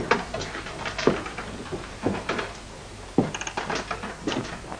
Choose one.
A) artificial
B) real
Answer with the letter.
A